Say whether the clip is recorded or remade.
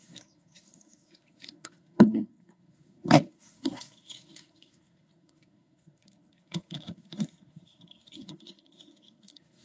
remade